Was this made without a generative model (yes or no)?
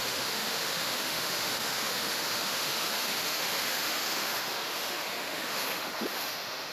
no